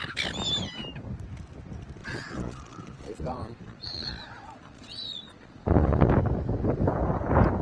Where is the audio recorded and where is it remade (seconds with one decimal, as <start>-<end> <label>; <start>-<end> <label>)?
0.0-2.0 recorded; 2.0-6.1 remade; 6.1-7.6 recorded